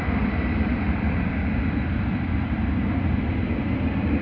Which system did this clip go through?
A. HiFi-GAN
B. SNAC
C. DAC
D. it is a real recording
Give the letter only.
D